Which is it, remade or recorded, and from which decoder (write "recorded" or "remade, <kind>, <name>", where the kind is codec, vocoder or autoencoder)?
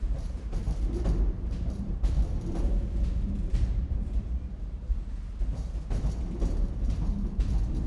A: remade, vocoder, BigVGAN v2